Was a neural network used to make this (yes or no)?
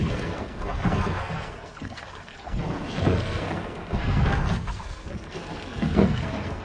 yes